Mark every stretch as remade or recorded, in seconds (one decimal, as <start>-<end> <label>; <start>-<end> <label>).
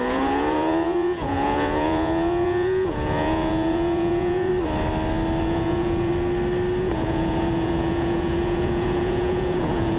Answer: 0.0-4.5 remade; 4.5-5.4 recorded; 5.4-6.1 remade; 6.1-6.8 recorded; 6.8-10.0 remade